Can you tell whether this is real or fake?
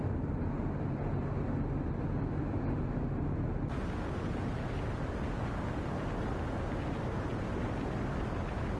real